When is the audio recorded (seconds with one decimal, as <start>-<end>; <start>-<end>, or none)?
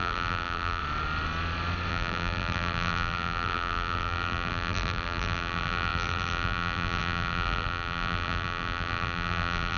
0.8-1.9